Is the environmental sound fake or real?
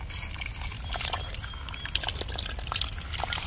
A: real